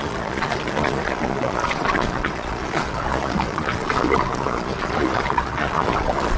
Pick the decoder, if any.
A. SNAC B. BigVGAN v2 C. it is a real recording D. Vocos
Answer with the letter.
D